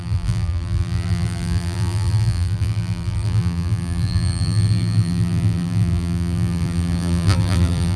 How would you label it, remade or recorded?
remade